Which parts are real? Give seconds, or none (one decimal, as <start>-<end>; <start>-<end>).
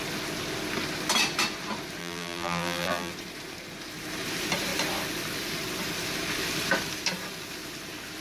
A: 0.0-2.0; 3.1-8.2